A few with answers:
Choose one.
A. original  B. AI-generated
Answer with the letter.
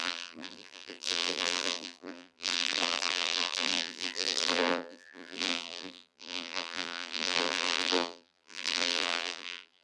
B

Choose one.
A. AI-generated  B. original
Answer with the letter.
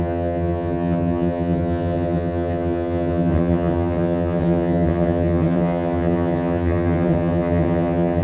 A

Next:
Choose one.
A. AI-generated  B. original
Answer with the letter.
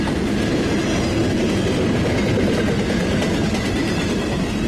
B